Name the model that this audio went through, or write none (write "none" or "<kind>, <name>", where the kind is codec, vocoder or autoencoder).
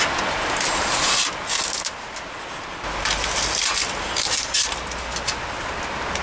none